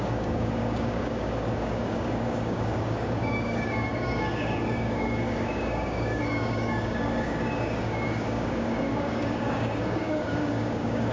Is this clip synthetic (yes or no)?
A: yes